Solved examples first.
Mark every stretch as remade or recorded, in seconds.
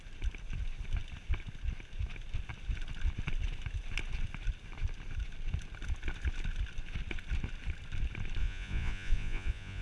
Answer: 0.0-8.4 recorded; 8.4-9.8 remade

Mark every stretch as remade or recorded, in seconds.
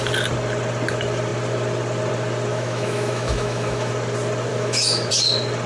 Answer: 0.0-2.5 recorded; 2.5-3.9 remade; 3.9-4.5 recorded; 4.5-5.1 remade; 5.1-5.7 recorded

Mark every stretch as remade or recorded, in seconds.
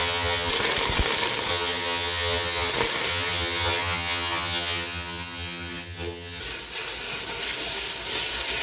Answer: 0.0-0.5 remade; 0.5-1.5 recorded; 1.5-2.7 remade; 2.7-3.1 recorded; 3.1-6.4 remade; 6.4-8.6 recorded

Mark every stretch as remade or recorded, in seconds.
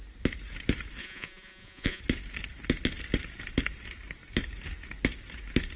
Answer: 0.0-1.0 recorded; 1.0-2.0 remade; 2.0-5.8 recorded